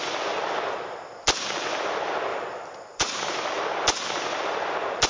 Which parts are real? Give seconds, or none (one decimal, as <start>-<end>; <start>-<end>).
0.0-2.3; 3.6-5.1